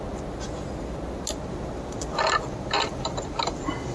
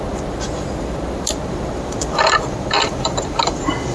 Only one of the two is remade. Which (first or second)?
second